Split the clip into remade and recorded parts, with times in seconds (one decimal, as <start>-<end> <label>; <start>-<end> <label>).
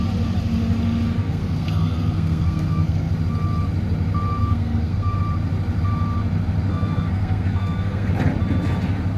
0.0-1.2 recorded; 1.2-3.1 remade; 3.1-4.4 recorded; 4.4-5.2 remade; 5.2-6.7 recorded; 6.7-8.1 remade; 8.1-9.2 recorded